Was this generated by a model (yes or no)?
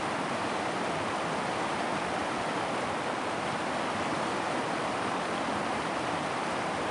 no